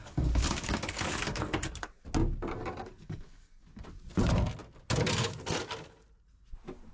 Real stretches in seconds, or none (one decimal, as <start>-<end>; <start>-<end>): 2.0-2.6; 3.8-6.9

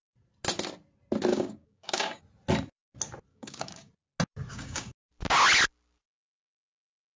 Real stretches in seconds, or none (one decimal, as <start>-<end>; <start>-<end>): 0.0-1.3; 2.2-3.3; 3.9-4.5; 5.1-7.2

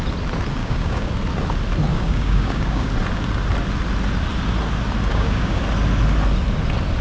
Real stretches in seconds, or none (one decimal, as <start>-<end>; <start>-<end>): 0.0-0.6; 1.1-1.9; 2.9-5.1; 5.6-7.0

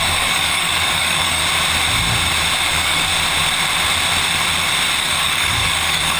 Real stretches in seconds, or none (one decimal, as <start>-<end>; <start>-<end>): 1.4-2.7; 3.1-5.0

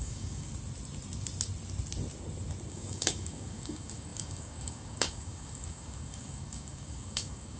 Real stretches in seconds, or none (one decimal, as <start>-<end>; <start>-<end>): 0.5-2.7